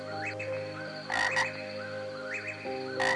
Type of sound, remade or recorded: recorded